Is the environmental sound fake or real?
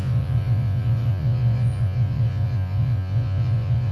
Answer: fake